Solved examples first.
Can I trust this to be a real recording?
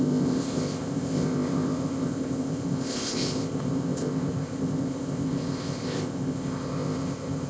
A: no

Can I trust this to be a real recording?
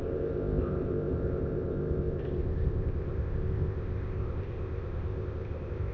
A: no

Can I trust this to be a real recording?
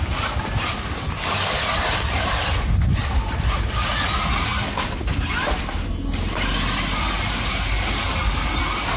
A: yes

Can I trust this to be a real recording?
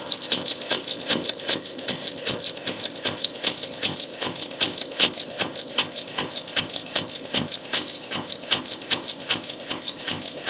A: no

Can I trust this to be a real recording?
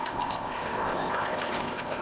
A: no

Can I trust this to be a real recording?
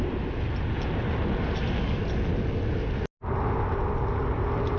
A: yes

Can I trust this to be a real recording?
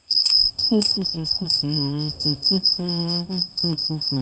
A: no